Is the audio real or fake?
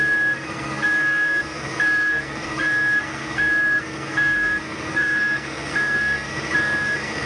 fake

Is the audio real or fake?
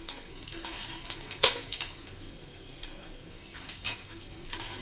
fake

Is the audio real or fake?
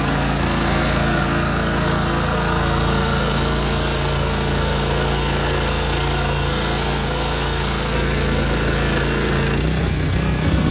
fake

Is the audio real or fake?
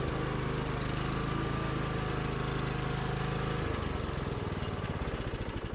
real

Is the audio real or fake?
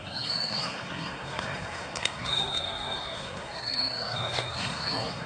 fake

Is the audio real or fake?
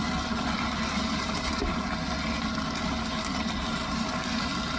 real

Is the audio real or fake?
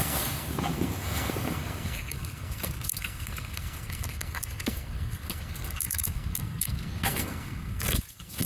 fake